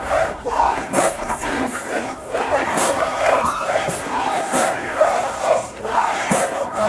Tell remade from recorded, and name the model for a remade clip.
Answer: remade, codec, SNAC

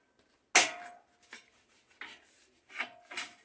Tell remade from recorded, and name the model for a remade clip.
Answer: recorded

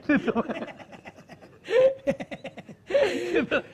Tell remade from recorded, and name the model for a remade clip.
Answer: recorded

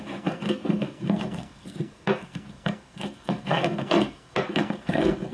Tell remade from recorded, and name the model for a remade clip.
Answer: remade, codec, SNAC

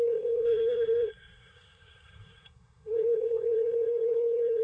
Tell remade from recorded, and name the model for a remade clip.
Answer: remade, codec, SNAC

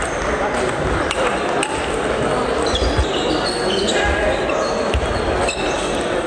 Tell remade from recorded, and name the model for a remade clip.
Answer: recorded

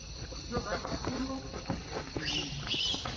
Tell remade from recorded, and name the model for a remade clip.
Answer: recorded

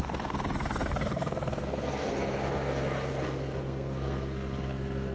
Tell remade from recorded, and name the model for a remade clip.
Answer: remade, codec, SNAC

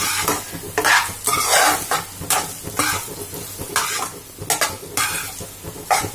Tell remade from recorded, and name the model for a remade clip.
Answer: recorded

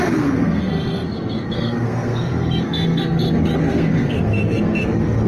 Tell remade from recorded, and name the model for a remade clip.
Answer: remade, codec, SNAC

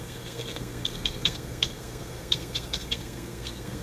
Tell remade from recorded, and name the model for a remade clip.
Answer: remade, codec, SNAC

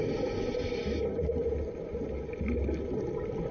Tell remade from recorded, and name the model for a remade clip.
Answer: recorded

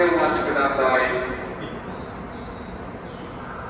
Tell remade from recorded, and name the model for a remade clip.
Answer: recorded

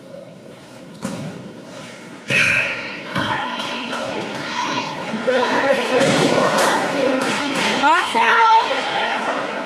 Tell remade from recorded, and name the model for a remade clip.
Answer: remade, codec, SNAC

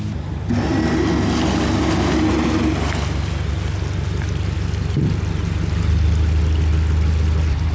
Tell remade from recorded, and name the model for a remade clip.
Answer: recorded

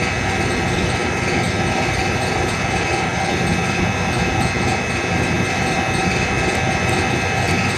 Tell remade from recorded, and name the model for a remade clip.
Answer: recorded